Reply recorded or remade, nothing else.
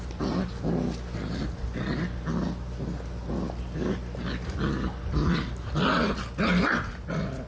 recorded